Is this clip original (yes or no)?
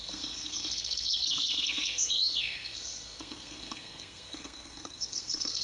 no